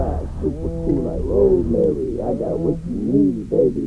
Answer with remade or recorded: recorded